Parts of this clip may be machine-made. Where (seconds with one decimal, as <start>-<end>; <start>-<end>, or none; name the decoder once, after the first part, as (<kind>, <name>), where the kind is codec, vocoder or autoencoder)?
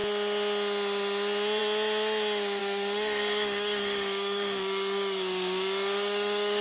2.6-6.6 (codec, DAC)